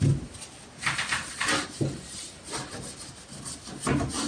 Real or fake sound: real